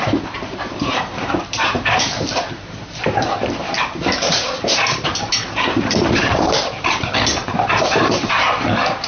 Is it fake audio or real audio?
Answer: fake